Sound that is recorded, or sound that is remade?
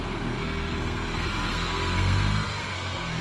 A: remade